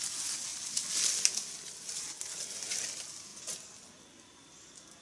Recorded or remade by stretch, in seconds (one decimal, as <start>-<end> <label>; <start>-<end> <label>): 0.0-5.0 recorded